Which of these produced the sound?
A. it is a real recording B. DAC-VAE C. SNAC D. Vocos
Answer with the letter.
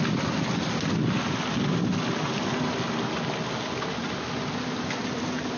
A